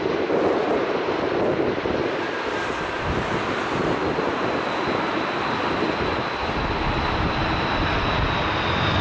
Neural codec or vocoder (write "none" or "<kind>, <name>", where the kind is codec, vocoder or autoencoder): none